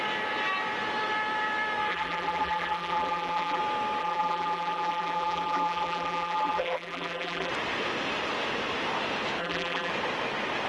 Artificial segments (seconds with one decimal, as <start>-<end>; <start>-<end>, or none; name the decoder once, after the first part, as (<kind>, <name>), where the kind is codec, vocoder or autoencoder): 1.9-3.6 (vocoder, BigVGAN v2); 4.0-7.5; 9.4-9.9